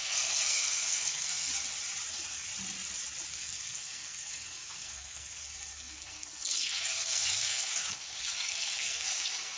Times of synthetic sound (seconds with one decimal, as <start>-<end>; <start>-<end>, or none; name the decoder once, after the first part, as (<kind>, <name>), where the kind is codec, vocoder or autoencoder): 0.0-1.5 (codec, SNAC); 2.1-2.5; 3.3-9.6